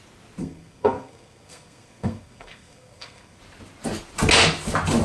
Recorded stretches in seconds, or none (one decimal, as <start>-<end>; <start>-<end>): 0.0-0.4; 3.4-5.0